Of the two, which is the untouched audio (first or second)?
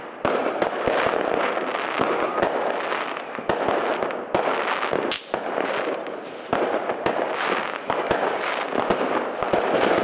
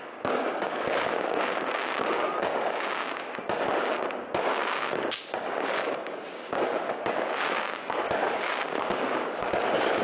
first